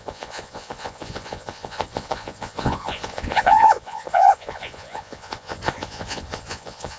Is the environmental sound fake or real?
fake